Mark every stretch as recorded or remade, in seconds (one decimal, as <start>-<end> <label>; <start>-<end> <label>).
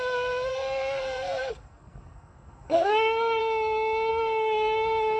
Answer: 0.0-0.5 recorded; 0.5-3.4 remade; 3.4-4.1 recorded; 4.1-5.2 remade